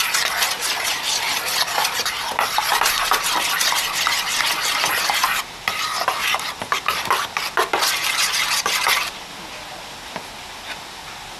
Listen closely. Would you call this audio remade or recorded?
recorded